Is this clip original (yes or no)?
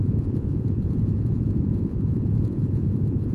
no